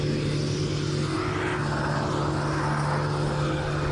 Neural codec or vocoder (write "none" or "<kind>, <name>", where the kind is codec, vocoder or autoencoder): none